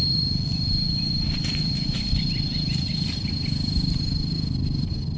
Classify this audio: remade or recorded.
recorded